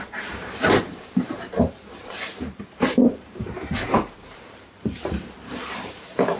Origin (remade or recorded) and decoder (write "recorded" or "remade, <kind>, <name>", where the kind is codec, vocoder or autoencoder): remade, vocoder, BigVGAN v2